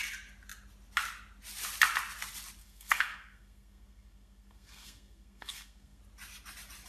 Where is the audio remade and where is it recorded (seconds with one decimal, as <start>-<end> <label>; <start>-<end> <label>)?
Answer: 0.0-2.6 recorded; 2.6-6.0 remade; 6.0-6.9 recorded